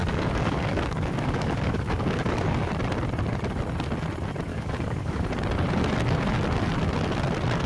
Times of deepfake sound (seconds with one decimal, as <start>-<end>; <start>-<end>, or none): 0.0-2.7; 4.5-5.3